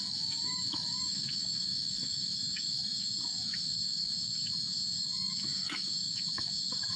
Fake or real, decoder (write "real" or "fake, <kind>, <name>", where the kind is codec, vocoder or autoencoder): fake, autoencoder, DAC-VAE